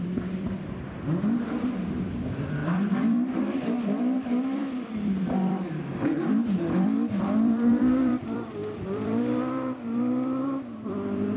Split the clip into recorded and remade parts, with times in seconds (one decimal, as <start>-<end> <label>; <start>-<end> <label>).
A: 0.0-11.4 remade